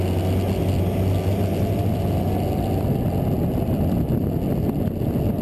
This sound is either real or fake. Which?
real